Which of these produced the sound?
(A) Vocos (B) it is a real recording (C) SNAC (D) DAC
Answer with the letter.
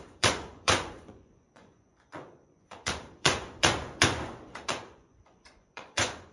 A